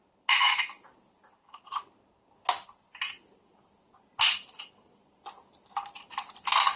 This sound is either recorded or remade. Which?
recorded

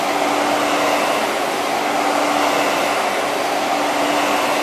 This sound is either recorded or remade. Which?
recorded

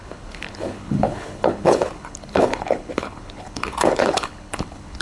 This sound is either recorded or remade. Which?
remade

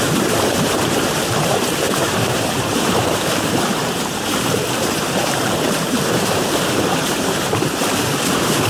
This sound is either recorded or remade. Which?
remade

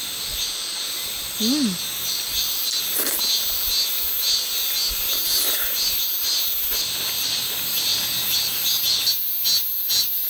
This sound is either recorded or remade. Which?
recorded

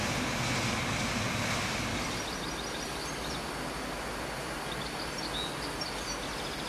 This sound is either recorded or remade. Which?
recorded